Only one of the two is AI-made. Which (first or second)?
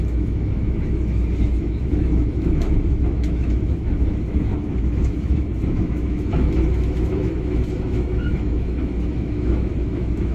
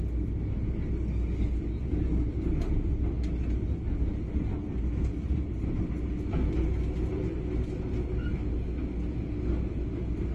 first